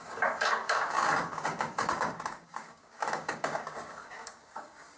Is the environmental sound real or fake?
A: fake